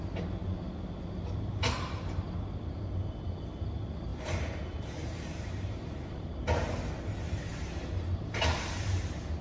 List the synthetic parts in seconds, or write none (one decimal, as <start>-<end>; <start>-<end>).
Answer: 4.1-6.3; 7.5-9.0

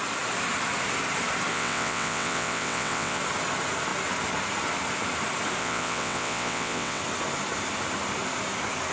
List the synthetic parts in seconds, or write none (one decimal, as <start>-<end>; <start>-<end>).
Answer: 1.5-3.2; 5.6-7.0

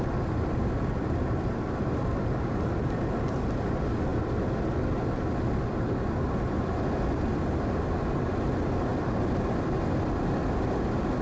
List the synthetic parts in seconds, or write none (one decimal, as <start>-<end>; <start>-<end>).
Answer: none

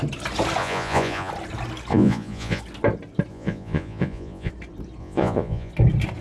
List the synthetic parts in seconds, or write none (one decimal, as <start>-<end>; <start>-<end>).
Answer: 0.6-1.3; 1.9-2.6; 3.3-4.5; 5.0-5.7

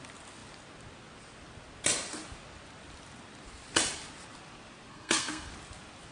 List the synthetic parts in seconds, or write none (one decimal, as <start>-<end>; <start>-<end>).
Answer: 4.9-5.5

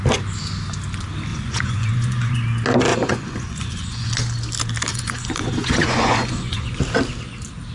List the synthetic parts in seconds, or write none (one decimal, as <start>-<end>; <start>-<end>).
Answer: 1.3-2.4; 2.9-4.1; 4.9-6.8

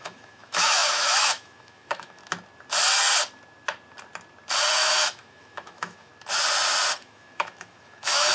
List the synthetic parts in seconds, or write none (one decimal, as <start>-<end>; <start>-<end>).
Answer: 0.0-2.2; 4.7-6.1; 7.0-8.3

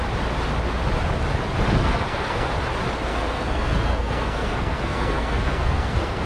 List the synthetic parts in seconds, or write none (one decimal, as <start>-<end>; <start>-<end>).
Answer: 1.8-2.5; 3.1-6.3